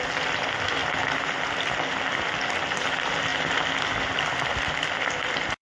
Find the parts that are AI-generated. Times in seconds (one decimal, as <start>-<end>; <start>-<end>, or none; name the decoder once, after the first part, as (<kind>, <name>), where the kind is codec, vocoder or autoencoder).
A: 0.0-0.8 (vocoder, BigVGAN v2); 1.5-3.3; 3.9-5.6